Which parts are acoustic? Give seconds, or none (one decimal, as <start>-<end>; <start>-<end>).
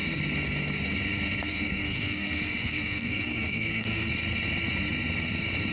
0.0-1.5; 4.1-5.7